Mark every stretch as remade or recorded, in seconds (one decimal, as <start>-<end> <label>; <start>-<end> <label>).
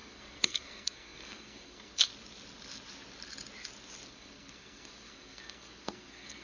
0.0-2.1 remade; 2.1-4.1 recorded; 4.1-6.4 remade